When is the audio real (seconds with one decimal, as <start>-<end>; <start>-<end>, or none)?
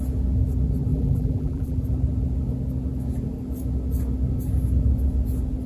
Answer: 0.0-0.9; 1.8-5.7